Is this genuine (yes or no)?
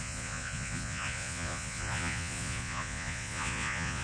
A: no